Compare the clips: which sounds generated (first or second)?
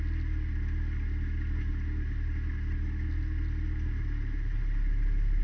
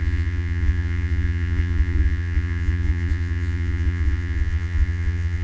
second